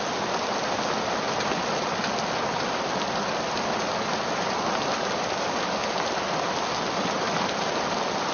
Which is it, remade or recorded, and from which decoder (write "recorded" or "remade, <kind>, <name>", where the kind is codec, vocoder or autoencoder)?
recorded